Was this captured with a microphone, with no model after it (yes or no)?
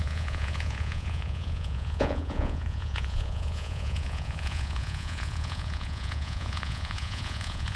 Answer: no